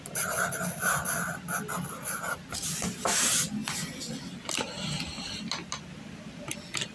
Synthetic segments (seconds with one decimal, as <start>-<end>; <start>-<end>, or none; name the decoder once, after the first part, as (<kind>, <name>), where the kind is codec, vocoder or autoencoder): none